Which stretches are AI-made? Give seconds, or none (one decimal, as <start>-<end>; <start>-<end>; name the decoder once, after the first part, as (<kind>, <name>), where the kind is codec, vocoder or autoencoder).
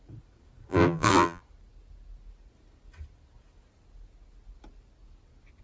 0.7-1.4 (vocoder, BigVGAN v2)